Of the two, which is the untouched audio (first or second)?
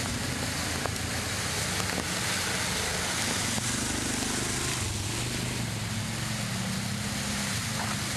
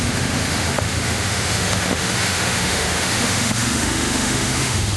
first